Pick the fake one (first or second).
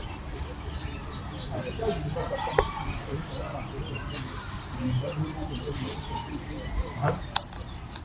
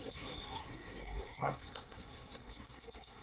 second